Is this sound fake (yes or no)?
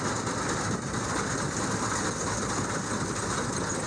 no